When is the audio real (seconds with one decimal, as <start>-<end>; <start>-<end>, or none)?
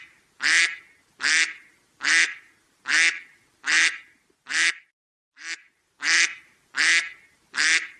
0.0-8.0